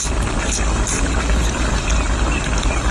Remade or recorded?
recorded